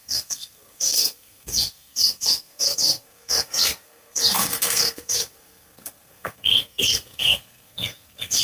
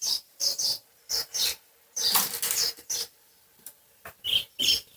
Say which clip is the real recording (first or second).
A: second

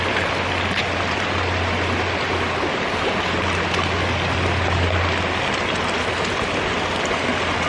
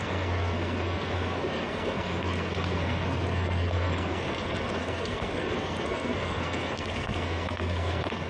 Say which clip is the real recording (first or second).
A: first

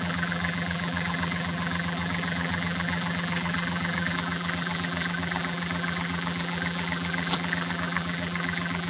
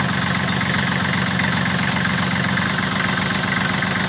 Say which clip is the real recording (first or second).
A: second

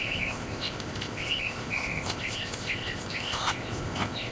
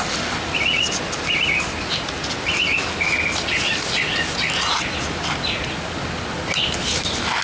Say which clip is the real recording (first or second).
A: second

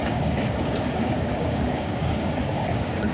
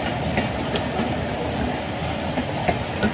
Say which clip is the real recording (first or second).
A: second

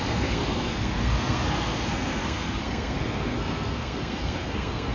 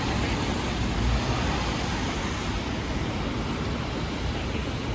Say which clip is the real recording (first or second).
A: second